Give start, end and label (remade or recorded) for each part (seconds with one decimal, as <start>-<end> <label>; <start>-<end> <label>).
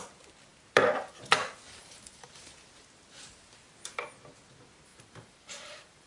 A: 0.0-1.8 recorded; 1.8-2.4 remade; 2.4-4.9 recorded; 4.9-6.1 remade